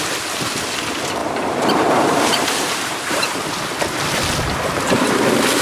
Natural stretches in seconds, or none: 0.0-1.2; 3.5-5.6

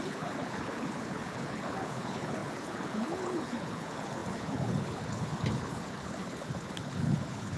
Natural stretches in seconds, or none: none

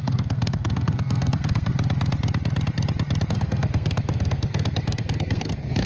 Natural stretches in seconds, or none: 1.7-3.3